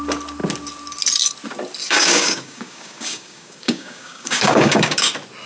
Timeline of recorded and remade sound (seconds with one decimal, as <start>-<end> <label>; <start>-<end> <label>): 0.0-1.8 recorded; 1.8-5.1 remade; 5.1-5.5 recorded